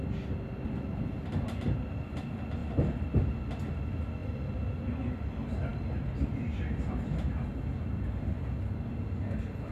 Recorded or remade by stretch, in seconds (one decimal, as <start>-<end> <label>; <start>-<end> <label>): 0.0-2.6 recorded; 2.6-3.5 remade; 3.5-5.7 recorded; 5.7-6.6 remade; 6.6-9.7 recorded